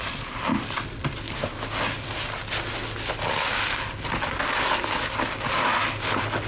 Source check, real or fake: real